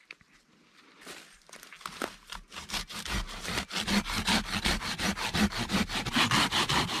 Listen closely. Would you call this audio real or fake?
real